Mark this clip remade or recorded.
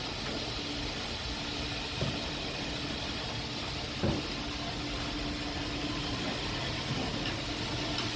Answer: recorded